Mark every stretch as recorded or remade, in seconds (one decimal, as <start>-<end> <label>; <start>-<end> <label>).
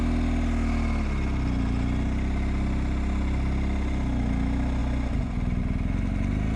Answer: 0.0-6.6 recorded